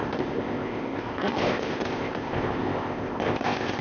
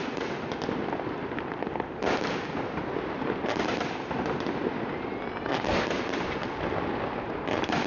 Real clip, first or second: second